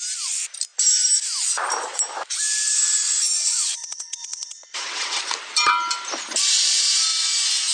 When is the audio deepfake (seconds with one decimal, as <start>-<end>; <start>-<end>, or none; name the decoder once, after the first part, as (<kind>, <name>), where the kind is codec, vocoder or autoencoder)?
3.4-5.2 (vocoder, WaveNeXt)